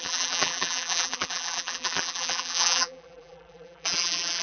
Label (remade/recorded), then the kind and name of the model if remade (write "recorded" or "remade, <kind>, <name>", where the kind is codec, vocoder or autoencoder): remade, vocoder, BigVGAN v2